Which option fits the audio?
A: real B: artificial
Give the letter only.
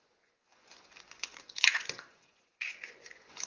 B